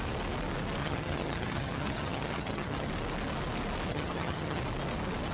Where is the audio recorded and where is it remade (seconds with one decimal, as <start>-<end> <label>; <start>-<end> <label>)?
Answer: 0.0-0.8 recorded; 0.8-2.9 remade; 2.9-3.9 recorded; 3.9-4.6 remade; 4.6-5.3 recorded